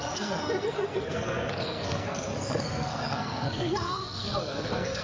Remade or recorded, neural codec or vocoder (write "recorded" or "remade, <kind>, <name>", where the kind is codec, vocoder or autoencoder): remade, codec, SNAC